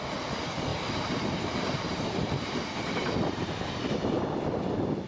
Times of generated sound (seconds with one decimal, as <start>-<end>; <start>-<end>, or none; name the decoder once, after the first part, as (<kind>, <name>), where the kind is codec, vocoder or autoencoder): 0.7-3.8 (vocoder, BigVGAN v2)